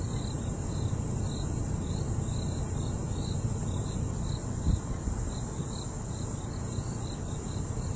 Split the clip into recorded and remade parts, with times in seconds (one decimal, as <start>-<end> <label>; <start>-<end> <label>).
0.0-8.0 recorded

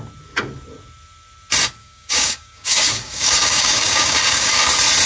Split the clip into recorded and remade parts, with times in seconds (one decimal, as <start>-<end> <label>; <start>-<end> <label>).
0.0-1.8 recorded; 1.8-4.6 remade; 4.6-5.1 recorded

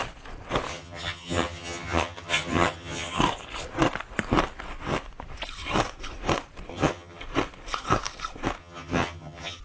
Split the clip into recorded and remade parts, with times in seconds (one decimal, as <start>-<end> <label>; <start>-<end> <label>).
0.0-0.7 recorded; 0.7-3.2 remade; 3.2-6.7 recorded; 6.7-7.2 remade; 7.2-8.6 recorded; 8.6-9.6 remade

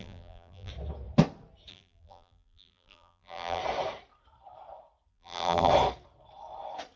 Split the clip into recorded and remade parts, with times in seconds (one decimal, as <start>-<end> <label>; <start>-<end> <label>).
0.0-0.7 remade; 0.7-1.7 recorded; 1.7-3.6 remade; 3.6-5.1 recorded; 5.1-5.7 remade; 5.7-7.0 recorded

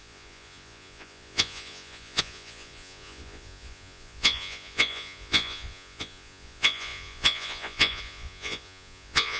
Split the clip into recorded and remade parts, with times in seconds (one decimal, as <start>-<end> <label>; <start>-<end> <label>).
0.0-9.4 remade

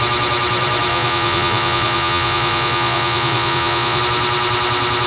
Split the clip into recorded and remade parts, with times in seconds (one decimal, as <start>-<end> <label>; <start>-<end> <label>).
0.0-0.9 recorded; 0.9-4.0 remade; 4.0-5.1 recorded

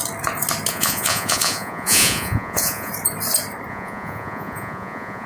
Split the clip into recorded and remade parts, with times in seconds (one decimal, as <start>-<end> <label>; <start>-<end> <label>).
0.0-0.7 recorded; 0.7-2.9 remade; 2.9-3.7 recorded; 3.7-5.3 remade